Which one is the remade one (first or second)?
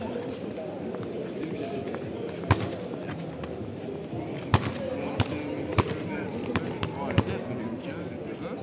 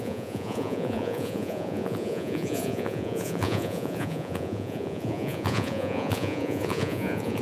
second